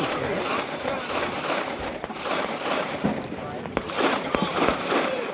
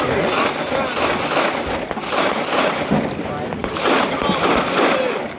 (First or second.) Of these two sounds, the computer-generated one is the first